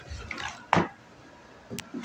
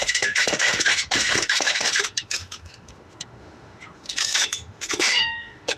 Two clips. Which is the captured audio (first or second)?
first